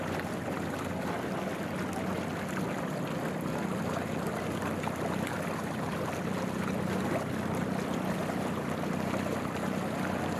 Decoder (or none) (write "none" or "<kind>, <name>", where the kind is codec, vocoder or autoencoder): none